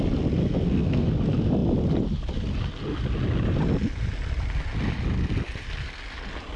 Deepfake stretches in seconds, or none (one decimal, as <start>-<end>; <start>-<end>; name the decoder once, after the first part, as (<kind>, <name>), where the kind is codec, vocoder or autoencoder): 0.4-1.1 (codec, SNAC)